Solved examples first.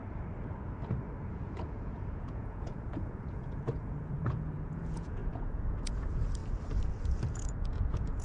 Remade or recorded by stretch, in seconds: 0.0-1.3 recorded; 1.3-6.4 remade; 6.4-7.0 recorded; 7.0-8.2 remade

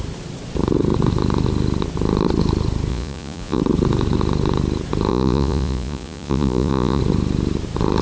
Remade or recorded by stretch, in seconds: 0.0-2.9 recorded; 2.9-3.6 remade; 3.6-5.1 recorded; 5.1-7.0 remade; 7.0-8.0 recorded

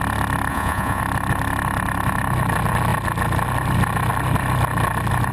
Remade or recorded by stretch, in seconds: 0.0-0.5 recorded; 0.5-1.0 remade; 1.0-5.3 recorded